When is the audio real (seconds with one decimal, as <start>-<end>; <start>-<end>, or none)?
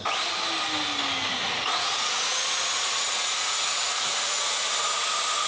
0.0-1.4; 4.7-5.5